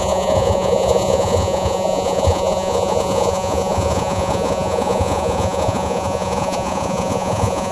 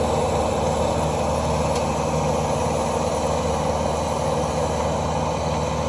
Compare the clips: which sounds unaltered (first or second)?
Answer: second